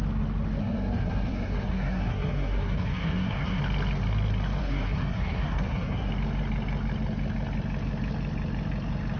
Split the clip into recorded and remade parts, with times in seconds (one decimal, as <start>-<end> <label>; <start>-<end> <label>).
0.0-0.6 recorded; 0.6-3.6 remade; 3.6-4.6 recorded; 4.6-6.1 remade; 6.1-9.2 recorded